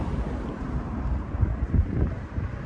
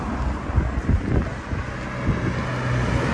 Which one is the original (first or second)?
second